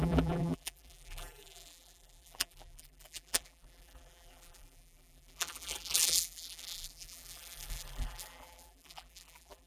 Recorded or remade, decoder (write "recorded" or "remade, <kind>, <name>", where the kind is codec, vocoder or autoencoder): remade, vocoder, BigVGAN v2